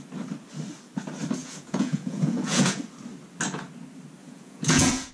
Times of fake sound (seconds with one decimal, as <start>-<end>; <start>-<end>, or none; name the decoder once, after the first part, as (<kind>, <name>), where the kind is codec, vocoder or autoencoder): 1.4-2.8 (vocoder, Vocos); 4.2-5.1